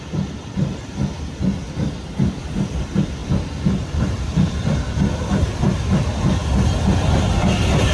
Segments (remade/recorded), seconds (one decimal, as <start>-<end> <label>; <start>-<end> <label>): 0.0-7.9 recorded